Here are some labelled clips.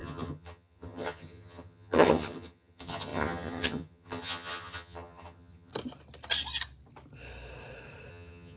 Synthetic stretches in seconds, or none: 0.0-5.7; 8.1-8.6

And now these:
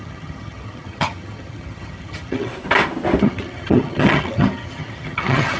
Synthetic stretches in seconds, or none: 0.0-2.5; 3.2-5.6